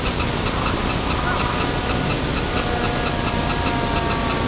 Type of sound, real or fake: real